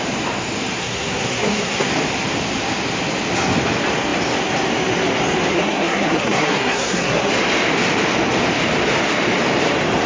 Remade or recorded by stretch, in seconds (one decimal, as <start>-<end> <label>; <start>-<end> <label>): 0.0-0.8 recorded; 0.8-1.9 remade; 1.9-5.5 recorded; 5.5-7.3 remade; 7.3-10.1 recorded